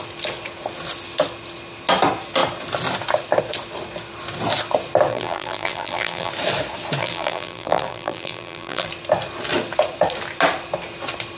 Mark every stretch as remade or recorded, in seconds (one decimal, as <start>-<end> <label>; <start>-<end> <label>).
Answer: 0.0-5.1 recorded; 5.1-6.3 remade; 6.3-7.0 recorded; 7.0-8.9 remade; 8.9-11.4 recorded